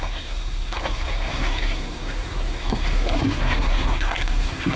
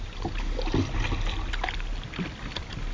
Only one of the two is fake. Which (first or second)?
first